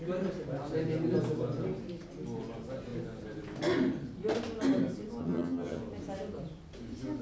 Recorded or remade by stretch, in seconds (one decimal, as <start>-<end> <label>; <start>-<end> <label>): 0.0-5.2 recorded; 5.2-5.8 remade; 5.8-7.2 recorded

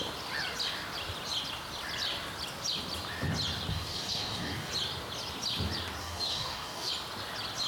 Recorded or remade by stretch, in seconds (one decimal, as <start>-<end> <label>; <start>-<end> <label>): 0.0-3.7 recorded; 3.7-4.7 remade; 4.7-6.0 recorded; 6.0-6.9 remade; 6.9-7.7 recorded